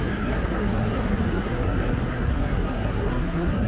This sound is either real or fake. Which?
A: fake